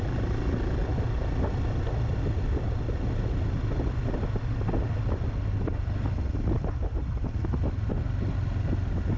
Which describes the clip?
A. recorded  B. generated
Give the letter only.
A